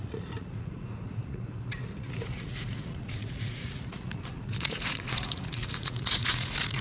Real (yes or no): no